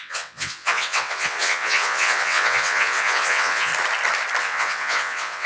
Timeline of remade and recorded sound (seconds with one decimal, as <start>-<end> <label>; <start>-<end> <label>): 0.0-3.7 remade; 3.7-4.4 recorded; 4.4-5.5 remade